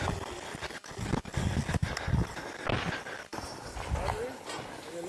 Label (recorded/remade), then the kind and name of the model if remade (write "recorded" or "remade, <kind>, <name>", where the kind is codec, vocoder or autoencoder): recorded